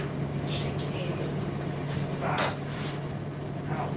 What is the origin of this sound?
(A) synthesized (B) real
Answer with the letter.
B